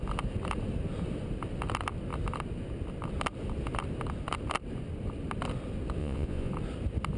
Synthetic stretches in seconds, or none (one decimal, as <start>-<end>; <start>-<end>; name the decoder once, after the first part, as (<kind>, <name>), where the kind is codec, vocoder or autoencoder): 6.0-6.5 (vocoder, Vocos)